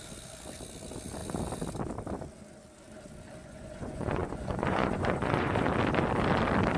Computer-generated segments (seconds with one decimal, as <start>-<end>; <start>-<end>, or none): 3.4-5.7

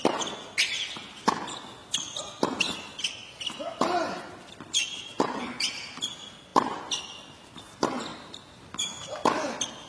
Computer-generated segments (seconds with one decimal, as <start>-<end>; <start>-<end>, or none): 6.5-7.6

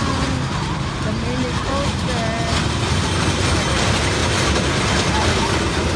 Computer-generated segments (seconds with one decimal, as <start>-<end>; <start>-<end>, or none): none

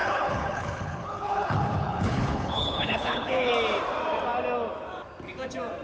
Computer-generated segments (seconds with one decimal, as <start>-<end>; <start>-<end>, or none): 0.0-3.5

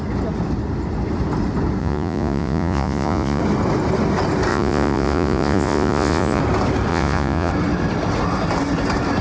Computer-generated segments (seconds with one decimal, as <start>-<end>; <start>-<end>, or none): 1.8-3.4; 4.5-6.4; 6.9-7.5

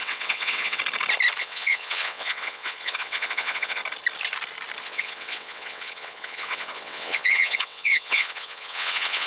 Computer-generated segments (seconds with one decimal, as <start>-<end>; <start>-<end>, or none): 0.0-0.8; 1.4-3.8; 4.8-9.3